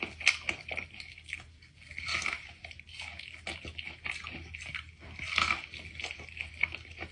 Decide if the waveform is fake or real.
real